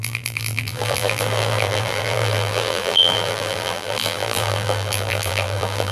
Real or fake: fake